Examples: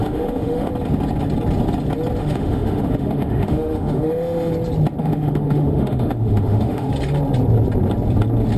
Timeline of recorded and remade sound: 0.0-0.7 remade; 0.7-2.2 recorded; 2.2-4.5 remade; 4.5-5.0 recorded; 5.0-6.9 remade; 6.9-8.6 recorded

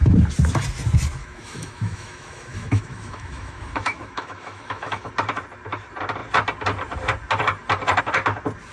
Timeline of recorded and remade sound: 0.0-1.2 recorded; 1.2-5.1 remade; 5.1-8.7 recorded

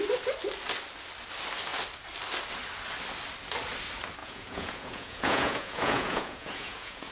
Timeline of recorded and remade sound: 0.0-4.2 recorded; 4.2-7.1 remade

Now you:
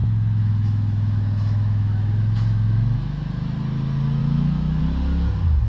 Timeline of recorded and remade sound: 0.0-3.4 remade; 3.4-4.2 recorded; 4.2-4.8 remade; 4.8-5.7 recorded